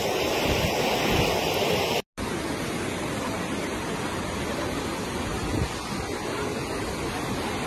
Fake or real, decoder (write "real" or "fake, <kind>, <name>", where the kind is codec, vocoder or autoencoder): real